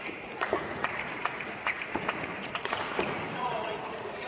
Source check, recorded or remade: remade